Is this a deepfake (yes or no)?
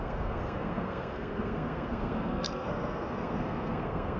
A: yes